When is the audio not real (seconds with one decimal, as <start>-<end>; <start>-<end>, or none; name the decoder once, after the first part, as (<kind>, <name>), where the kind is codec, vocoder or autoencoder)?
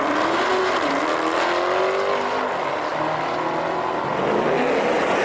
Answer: none